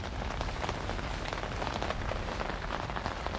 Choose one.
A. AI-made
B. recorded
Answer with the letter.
B